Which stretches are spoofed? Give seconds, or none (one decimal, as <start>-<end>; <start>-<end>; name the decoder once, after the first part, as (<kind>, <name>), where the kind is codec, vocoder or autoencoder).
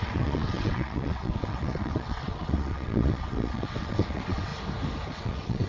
0.0-4.5 (vocoder, WaveNeXt); 5.1-5.7